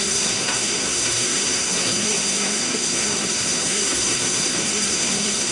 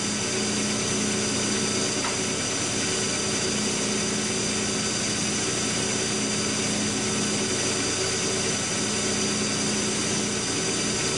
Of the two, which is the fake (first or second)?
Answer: first